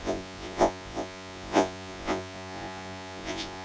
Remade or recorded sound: remade